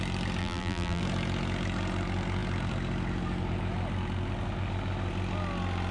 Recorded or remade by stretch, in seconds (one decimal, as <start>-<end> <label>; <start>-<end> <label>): 0.0-0.4 recorded; 0.4-1.0 remade; 1.0-5.9 recorded